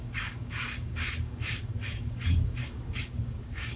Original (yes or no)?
no